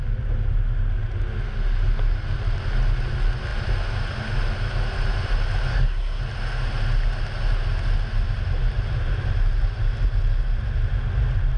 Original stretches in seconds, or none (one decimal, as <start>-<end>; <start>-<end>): 0.0-5.7; 6.2-11.6